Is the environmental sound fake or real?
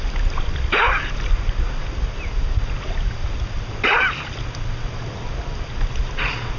real